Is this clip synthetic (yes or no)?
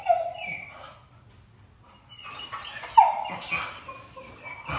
no